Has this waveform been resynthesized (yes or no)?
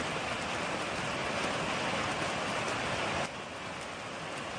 no